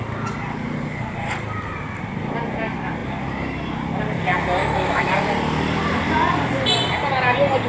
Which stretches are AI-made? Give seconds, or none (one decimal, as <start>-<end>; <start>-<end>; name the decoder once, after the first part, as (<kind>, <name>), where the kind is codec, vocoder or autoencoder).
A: 4.6-5.1 (autoencoder, DAC-VAE)